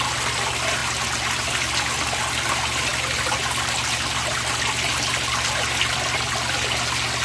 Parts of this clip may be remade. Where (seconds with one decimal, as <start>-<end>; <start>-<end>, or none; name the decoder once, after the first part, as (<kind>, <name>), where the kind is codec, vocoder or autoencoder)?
none

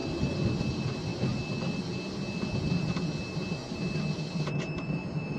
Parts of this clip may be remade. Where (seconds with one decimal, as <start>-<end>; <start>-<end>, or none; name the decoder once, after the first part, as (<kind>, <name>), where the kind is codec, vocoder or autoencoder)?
0.7-1.1 (vocoder, BigVGAN v2); 4.3-5.4

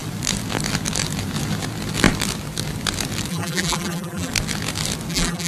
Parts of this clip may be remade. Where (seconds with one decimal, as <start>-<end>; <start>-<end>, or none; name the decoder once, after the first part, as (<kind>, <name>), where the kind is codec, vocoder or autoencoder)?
3.3-4.3 (vocoder, BigVGAN v2); 5.1-5.5

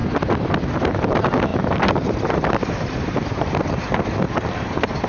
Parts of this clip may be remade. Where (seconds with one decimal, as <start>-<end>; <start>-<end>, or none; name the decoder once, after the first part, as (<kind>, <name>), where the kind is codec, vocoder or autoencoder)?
0.7-5.1 (vocoder, BigVGAN v2)

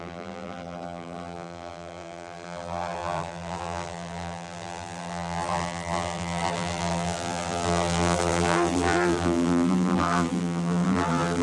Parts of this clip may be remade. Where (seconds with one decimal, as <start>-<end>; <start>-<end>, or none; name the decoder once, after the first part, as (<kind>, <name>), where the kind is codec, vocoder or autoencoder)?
0.0-11.4 (vocoder, BigVGAN v2)

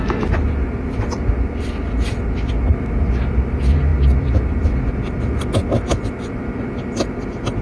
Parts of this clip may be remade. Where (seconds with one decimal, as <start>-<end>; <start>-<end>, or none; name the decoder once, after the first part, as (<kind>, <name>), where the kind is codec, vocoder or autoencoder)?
3.9-4.9 (vocoder, BigVGAN v2)

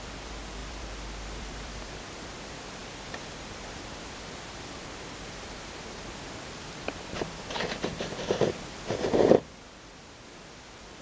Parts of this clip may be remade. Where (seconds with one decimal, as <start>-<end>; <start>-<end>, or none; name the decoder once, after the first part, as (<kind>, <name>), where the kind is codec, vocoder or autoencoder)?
0.0-2.8 (vocoder, BigVGAN v2); 3.4-11.0